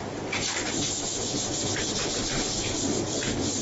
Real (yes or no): yes